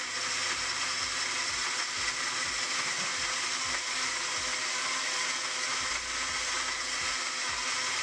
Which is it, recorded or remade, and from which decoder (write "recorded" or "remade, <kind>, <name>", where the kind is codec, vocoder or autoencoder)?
recorded